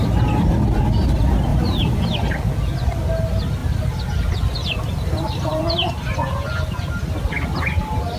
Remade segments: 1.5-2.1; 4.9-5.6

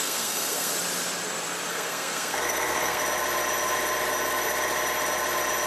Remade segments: 0.0-0.7; 1.7-3.0

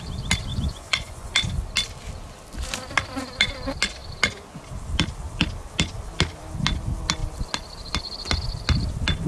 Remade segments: 0.5-1.3